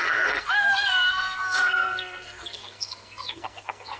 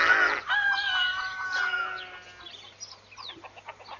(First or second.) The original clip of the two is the second